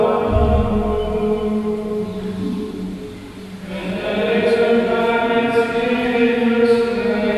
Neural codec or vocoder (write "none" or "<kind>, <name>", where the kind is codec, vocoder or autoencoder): none